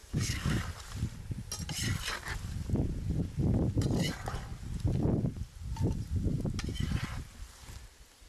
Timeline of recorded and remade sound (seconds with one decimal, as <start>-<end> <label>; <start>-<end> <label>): 0.0-0.6 remade; 0.6-8.3 recorded